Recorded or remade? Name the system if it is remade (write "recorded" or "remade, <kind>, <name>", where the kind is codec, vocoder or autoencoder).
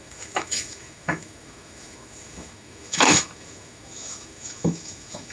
remade, autoencoder, DAC-VAE